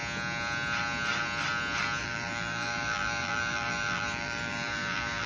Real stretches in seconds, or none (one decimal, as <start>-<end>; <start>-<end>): 0.0-2.0

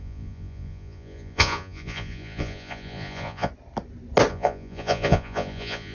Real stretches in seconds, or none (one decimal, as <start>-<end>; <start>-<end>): 3.5-4.3